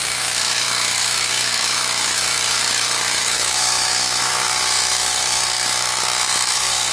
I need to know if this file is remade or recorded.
remade